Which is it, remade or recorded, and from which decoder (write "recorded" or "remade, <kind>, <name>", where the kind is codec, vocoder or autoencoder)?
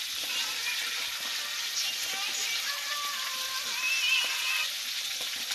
recorded